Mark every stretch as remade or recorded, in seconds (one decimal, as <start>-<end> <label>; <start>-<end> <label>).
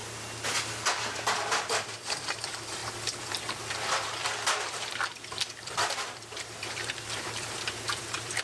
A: 0.0-0.9 recorded; 0.9-8.4 remade